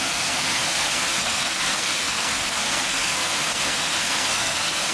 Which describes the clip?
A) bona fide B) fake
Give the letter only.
B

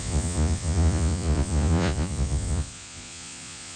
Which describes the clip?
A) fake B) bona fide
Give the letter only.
A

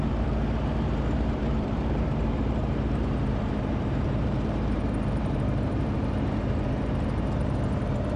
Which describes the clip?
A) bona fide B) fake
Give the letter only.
B